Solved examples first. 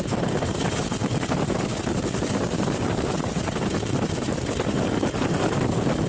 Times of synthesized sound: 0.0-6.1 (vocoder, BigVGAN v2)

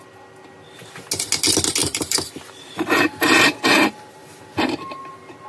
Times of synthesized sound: 1.8-5.1 (vocoder, BigVGAN v2)